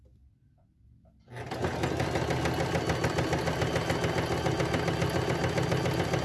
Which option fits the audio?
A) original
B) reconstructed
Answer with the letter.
A